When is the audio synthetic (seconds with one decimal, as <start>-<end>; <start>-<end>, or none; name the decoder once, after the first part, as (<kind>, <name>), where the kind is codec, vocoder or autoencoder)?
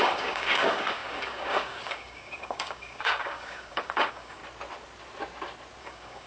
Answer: 0.0-4.4 (codec, DAC); 5.8-6.3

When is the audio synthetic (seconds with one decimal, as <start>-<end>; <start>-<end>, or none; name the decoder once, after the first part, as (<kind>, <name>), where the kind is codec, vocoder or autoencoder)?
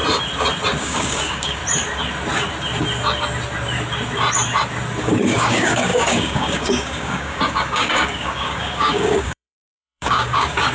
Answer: 0.8-1.6 (codec, DAC); 5.0-10.7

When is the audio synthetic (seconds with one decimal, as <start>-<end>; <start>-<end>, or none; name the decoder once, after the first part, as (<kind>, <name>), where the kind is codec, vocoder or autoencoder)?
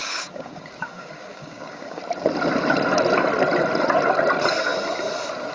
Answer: 0.0-2.0 (codec, DAC)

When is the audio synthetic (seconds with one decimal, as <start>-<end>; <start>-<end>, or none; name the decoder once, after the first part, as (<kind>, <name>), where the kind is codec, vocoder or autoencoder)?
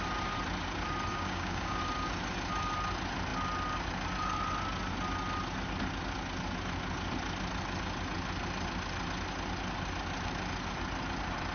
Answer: 1.1-1.8 (codec, DAC)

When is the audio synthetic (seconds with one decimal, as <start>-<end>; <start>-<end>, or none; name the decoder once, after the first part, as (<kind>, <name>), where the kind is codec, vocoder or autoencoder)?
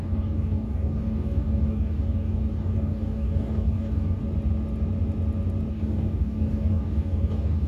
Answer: 0.0-4.2 (codec, DAC); 5.7-7.7